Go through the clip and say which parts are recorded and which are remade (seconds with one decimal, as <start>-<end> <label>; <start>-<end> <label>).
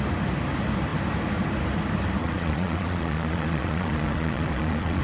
0.0-2.2 recorded; 2.2-5.0 remade